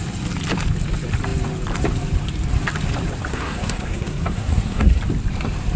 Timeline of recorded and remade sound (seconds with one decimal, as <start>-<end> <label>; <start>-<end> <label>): 0.0-3.3 recorded; 3.3-5.0 remade; 5.0-5.8 recorded